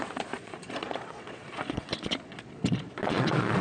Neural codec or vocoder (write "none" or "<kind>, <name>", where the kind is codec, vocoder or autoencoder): vocoder, Vocos